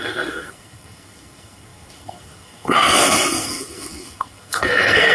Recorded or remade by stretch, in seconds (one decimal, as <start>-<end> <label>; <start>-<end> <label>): 0.0-5.1 remade